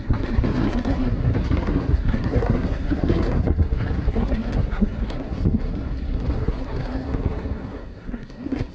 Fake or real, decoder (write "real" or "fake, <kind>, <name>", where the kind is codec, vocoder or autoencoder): fake, codec, SNAC